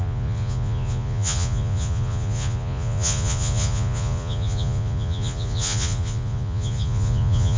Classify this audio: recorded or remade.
remade